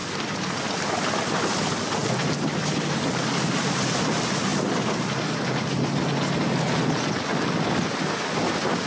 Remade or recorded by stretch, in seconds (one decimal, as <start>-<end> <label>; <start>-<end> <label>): 0.0-0.6 remade; 0.6-2.0 recorded; 2.0-3.9 remade; 3.9-8.9 recorded